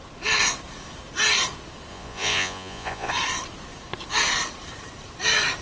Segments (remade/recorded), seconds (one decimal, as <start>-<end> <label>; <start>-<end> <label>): 0.0-1.9 recorded; 1.9-3.1 remade; 3.1-5.6 recorded